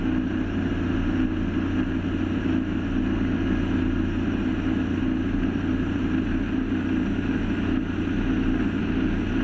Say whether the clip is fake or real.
real